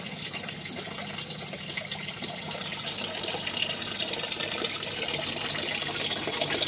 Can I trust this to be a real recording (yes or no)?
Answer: yes